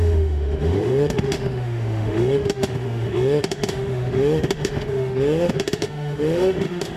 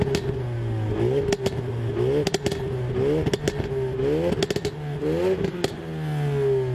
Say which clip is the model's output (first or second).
first